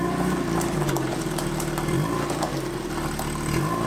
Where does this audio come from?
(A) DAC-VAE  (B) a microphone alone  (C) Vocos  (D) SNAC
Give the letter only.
B